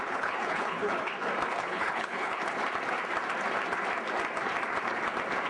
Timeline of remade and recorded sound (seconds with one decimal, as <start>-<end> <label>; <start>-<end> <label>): 0.0-1.1 remade; 1.1-1.6 recorded; 1.6-2.4 remade; 2.4-5.5 recorded